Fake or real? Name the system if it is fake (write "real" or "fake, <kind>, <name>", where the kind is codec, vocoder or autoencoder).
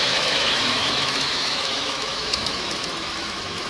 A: fake, autoencoder, DAC-VAE